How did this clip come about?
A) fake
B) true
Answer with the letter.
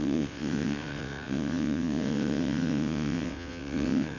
A